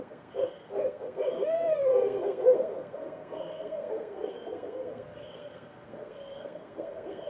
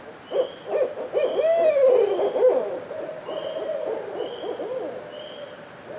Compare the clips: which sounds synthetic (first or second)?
first